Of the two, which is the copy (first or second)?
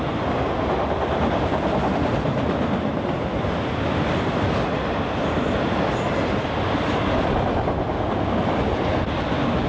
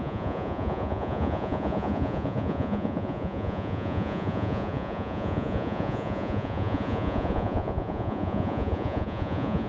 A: second